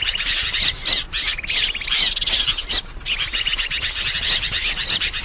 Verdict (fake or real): real